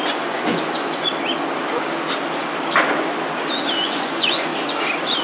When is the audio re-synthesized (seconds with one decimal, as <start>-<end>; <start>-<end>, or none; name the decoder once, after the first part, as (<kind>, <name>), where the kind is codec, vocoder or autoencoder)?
0.0-1.1 (vocoder, Vocos); 3.8-4.5

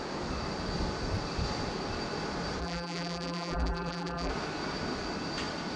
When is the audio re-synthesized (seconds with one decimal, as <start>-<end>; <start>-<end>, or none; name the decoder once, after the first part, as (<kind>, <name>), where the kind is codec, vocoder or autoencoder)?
2.6-4.3 (vocoder, BigVGAN v2)

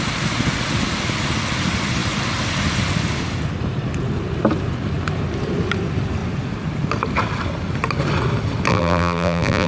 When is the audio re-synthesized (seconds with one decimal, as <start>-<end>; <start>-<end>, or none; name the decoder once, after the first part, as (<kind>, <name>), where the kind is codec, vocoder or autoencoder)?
8.7-9.7 (vocoder, BigVGAN v2)

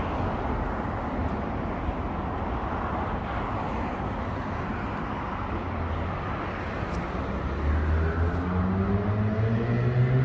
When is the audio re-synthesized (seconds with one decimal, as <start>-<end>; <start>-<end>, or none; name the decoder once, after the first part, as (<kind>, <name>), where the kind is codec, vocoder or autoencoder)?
none

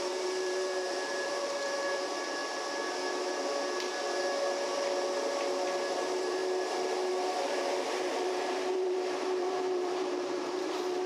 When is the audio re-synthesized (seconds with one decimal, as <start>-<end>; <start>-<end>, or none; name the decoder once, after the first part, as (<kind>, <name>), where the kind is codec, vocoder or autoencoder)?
0.0-2.4 (vocoder, BigVGAN v2); 5.9-11.1

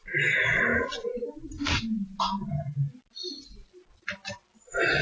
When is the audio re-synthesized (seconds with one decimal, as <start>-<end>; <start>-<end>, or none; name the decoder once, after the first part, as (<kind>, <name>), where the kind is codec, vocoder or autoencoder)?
none

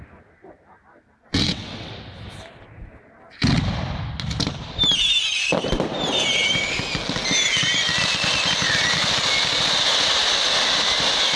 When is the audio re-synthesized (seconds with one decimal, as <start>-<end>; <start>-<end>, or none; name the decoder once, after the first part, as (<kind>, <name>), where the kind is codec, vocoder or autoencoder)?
1.2-1.9 (vocoder, WaveNeXt)